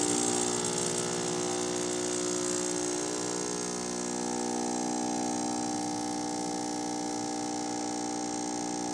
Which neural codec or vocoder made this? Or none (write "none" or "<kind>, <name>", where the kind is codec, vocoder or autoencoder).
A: none